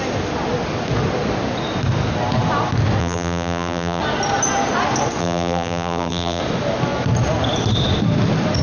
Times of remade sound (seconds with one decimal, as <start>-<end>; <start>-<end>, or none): 3.0-4.0; 5.2-6.4